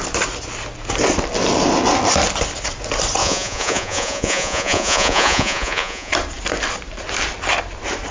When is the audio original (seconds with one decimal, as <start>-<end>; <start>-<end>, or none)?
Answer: 0.0-3.2; 6.1-8.1